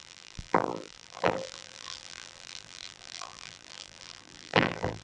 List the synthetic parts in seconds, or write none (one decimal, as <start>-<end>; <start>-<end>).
0.0-5.0